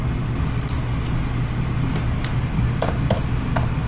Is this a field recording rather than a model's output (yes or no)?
yes